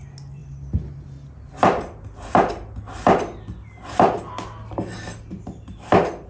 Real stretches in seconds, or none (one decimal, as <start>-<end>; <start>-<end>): 0.0-6.3